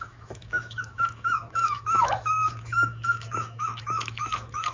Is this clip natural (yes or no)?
no